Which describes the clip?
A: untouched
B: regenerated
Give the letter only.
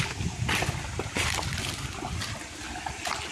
A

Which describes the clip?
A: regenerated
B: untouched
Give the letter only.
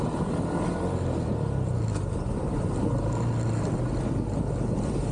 B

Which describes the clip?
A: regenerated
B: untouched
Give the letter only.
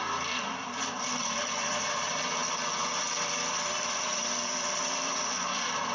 A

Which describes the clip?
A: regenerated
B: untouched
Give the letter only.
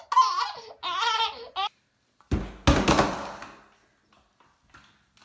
B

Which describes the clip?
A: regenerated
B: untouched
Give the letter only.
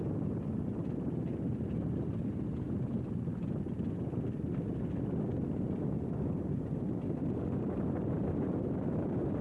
A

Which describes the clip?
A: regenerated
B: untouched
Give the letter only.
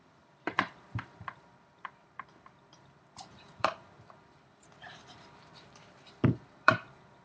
A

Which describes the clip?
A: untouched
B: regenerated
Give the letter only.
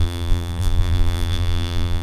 B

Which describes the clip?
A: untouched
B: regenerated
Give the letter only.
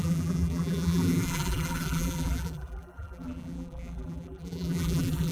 B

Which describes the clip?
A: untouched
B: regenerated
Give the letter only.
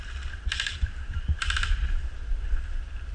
B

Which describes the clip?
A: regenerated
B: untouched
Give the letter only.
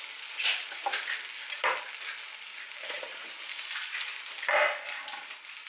B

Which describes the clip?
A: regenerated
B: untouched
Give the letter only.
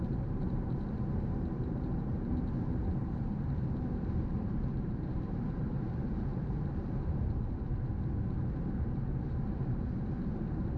A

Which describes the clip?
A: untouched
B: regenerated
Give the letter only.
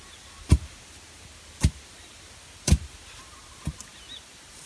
A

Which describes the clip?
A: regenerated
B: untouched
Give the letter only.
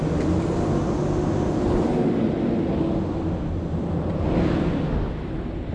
B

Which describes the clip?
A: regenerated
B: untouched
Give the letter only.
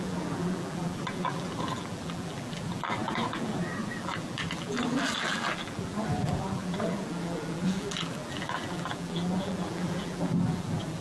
A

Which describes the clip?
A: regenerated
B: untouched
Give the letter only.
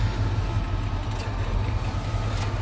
B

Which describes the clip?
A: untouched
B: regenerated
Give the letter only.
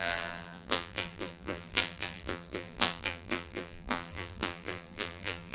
B